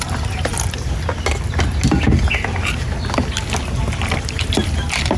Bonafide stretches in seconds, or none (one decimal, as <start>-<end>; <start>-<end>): 0.5-3.6